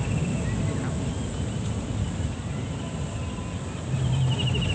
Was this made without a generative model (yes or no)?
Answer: yes